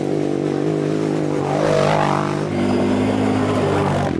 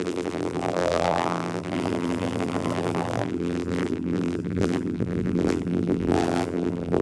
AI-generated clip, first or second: second